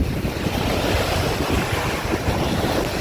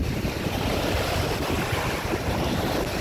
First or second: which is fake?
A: second